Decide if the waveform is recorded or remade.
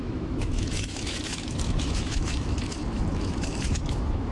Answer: remade